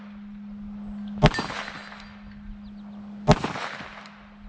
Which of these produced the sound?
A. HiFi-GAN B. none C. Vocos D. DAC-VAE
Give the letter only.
B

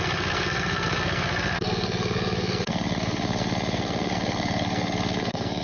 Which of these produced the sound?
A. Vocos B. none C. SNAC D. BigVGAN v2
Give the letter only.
C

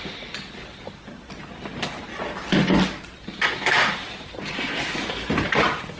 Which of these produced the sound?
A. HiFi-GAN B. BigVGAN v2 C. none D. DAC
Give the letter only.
C